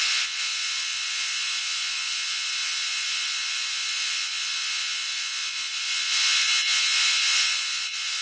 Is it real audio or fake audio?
fake